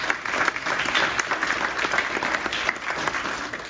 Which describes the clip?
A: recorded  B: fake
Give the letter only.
A